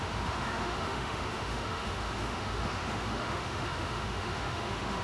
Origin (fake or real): fake